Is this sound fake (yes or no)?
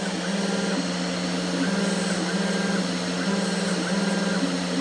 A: no